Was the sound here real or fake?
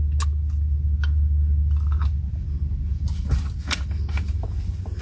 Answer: real